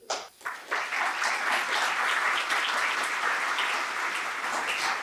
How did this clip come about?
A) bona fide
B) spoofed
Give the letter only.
A